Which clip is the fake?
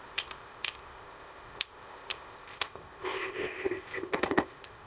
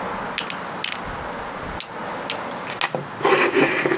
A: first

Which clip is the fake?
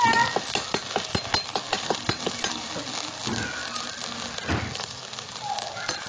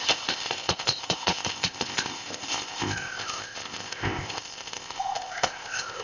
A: second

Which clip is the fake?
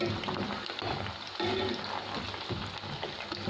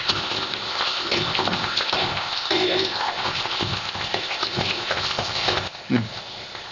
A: second